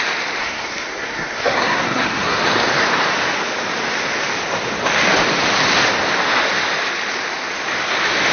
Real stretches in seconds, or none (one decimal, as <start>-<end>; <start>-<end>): 0.0-0.4; 2.4-8.3